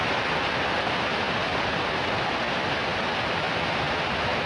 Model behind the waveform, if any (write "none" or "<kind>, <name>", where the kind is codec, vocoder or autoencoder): none